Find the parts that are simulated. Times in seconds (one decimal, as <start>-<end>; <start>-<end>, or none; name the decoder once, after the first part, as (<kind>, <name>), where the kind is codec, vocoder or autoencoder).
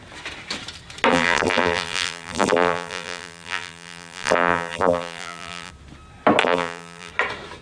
1.1-5.7 (vocoder, BigVGAN v2); 6.4-7.1